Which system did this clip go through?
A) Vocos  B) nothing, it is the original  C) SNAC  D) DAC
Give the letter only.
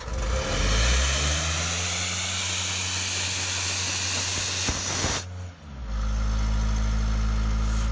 B